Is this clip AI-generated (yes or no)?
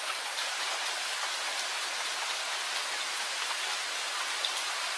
no